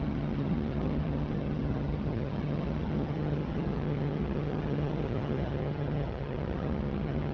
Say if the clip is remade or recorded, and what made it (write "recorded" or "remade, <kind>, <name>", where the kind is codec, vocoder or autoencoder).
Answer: remade, vocoder, HiFi-GAN